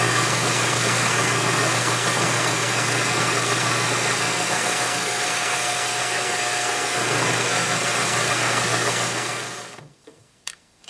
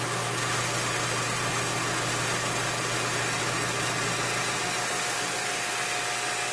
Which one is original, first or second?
second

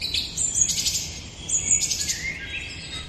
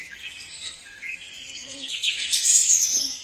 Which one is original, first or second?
first